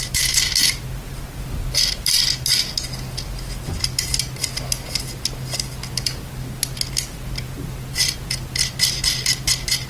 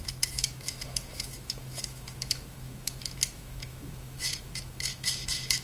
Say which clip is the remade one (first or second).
second